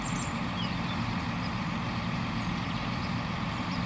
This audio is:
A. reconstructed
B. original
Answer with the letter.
B